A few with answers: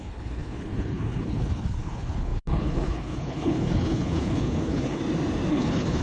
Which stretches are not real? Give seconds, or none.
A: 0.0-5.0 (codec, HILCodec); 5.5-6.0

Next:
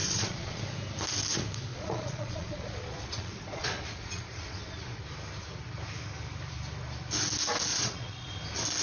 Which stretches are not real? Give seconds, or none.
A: 0.0-0.6 (vocoder, Vocos); 1.7-5.0; 7.7-8.3

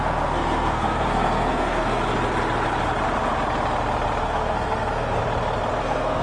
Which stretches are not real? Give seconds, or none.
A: 0.0-2.0 (codec, SNAC); 4.2-5.2; 5.8-6.2